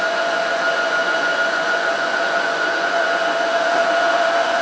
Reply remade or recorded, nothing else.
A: remade